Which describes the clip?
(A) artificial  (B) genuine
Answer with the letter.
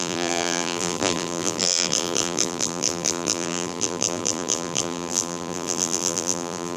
A